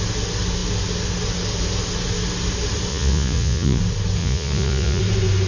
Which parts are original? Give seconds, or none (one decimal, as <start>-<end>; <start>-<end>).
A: 0.0-2.9; 3.8-4.2; 5.0-5.5